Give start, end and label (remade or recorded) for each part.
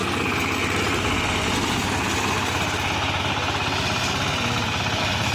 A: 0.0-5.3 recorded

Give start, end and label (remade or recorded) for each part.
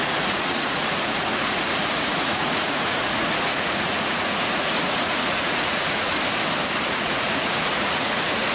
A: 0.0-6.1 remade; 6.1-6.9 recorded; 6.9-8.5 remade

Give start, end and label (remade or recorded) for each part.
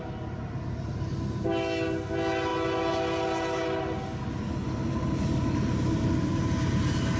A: 0.0-7.2 recorded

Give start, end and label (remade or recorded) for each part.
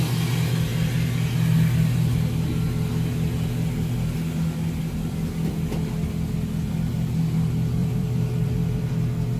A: 0.0-7.8 recorded; 7.8-8.9 remade; 8.9-9.4 recorded